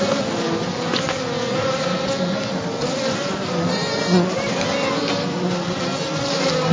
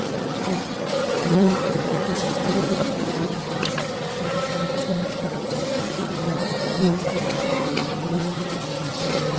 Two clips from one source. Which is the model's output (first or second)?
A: second